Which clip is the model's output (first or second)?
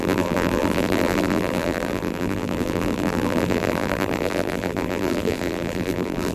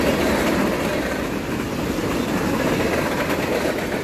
first